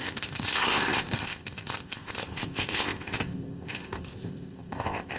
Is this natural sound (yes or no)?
no